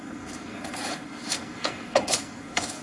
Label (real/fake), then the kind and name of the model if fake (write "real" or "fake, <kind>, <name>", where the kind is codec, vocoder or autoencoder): fake, codec, SNAC